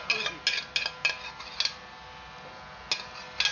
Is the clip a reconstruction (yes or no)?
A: no